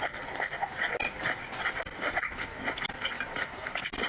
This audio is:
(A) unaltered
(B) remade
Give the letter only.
A